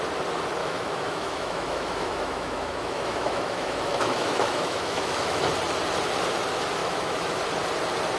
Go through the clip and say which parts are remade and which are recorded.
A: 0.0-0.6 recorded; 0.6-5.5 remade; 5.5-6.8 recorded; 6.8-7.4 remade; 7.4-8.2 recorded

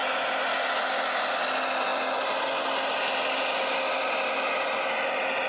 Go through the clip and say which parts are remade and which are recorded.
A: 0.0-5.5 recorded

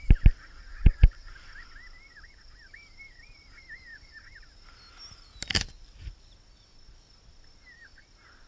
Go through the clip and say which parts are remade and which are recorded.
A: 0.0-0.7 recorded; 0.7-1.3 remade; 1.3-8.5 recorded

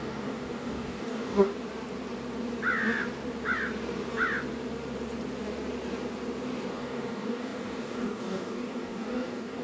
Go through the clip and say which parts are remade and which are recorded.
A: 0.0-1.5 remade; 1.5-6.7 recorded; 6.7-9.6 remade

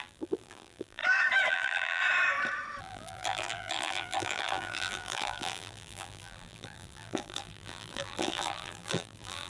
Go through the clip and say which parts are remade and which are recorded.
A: 0.0-1.0 remade; 1.0-1.5 recorded; 1.5-2.0 remade; 2.0-2.8 recorded; 2.8-9.5 remade

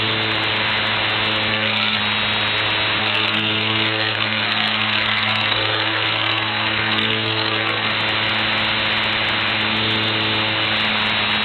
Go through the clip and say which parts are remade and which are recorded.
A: 0.0-1.5 recorded; 1.5-2.0 remade; 2.0-3.0 recorded; 3.0-7.9 remade; 7.9-11.4 recorded